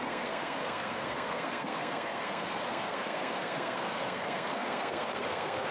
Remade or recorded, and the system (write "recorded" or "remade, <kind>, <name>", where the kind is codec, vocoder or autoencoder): remade, codec, SNAC